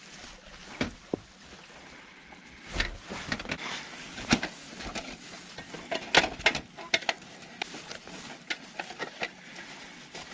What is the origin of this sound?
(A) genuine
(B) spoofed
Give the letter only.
A